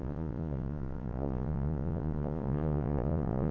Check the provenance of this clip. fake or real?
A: fake